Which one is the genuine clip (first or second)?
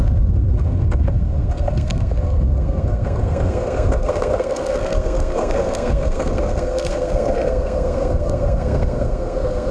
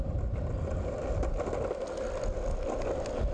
second